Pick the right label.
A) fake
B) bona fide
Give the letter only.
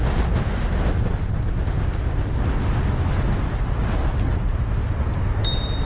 B